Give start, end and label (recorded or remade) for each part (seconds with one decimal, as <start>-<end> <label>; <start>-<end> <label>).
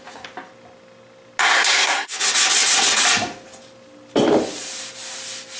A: 0.0-1.4 recorded; 1.4-2.1 remade; 2.1-5.6 recorded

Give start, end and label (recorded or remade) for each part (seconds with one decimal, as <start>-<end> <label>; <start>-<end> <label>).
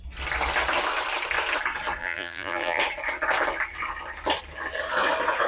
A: 0.0-2.0 recorded; 2.0-2.8 remade; 2.8-5.5 recorded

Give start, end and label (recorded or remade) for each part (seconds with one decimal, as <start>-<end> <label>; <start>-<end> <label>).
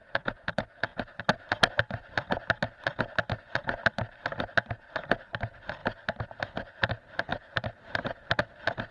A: 0.0-8.9 recorded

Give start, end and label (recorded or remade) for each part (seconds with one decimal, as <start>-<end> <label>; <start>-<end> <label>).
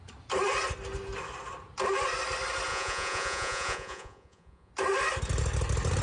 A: 0.0-2.7 recorded; 2.7-4.7 remade; 4.7-6.0 recorded